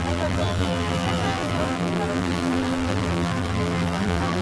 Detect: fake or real fake